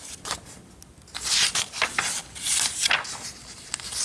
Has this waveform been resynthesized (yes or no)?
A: no